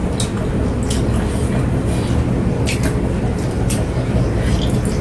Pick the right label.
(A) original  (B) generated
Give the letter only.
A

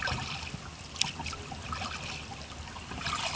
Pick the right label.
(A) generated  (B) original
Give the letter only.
B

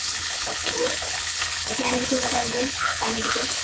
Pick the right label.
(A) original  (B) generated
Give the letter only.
B